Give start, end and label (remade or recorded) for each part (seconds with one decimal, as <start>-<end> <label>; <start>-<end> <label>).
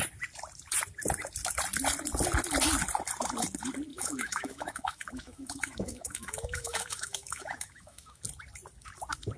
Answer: 0.0-3.9 recorded; 3.9-8.2 remade; 8.2-9.4 recorded